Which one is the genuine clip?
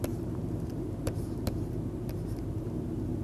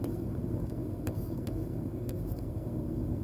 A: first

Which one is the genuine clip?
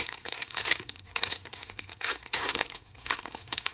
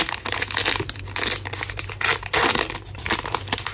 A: second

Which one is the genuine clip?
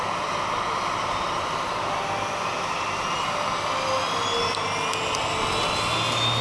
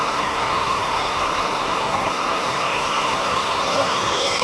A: first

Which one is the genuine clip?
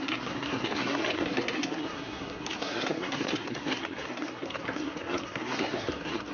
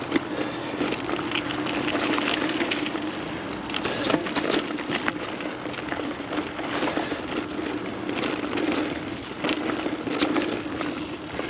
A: second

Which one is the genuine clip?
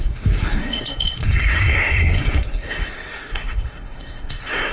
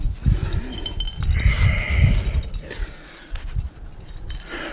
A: second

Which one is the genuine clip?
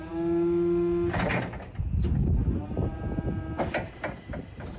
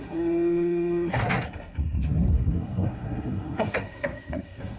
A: first